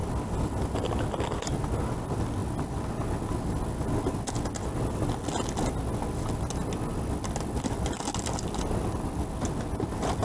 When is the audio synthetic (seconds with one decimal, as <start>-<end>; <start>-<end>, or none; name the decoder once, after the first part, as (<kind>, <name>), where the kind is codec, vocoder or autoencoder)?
none